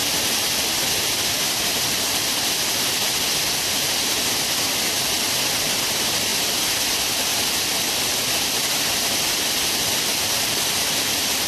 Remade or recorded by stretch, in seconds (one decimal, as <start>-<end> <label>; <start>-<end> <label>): 0.0-11.5 recorded